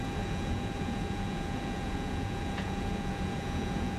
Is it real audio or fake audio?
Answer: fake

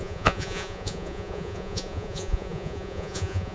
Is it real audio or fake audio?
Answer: fake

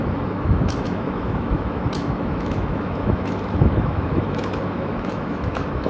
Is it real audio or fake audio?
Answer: fake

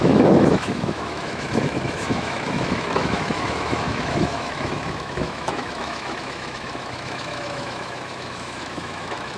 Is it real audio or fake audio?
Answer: fake